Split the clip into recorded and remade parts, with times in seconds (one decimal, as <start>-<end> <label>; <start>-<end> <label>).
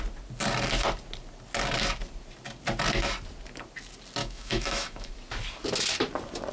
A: 0.0-4.2 recorded; 4.2-5.1 remade; 5.1-6.5 recorded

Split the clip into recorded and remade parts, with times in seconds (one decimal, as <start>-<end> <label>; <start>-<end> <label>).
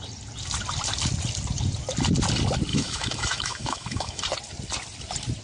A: 0.0-2.7 recorded; 2.7-4.2 remade; 4.2-5.4 recorded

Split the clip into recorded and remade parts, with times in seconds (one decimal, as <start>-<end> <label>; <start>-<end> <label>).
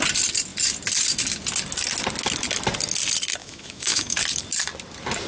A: 0.0-3.4 recorded; 3.4-4.2 remade; 4.2-5.3 recorded